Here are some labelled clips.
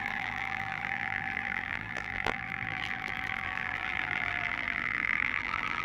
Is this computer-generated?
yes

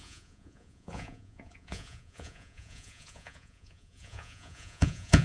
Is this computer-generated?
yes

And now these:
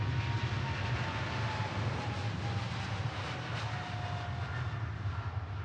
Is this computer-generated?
no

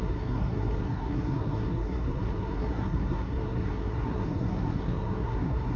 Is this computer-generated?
yes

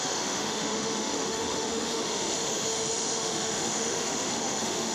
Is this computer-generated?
yes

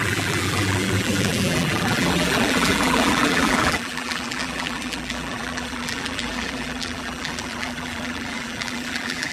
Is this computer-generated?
yes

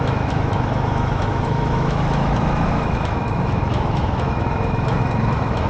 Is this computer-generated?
yes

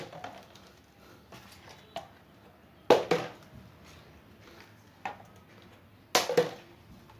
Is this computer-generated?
no